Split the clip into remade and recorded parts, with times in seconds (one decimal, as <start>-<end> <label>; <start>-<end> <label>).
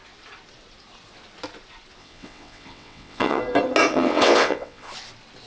0.0-2.0 recorded; 2.0-3.4 remade; 3.4-3.9 recorded; 3.9-4.9 remade; 4.9-5.5 recorded